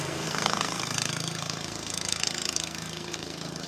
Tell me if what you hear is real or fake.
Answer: fake